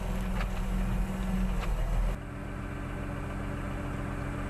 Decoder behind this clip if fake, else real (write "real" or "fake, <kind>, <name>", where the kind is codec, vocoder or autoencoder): real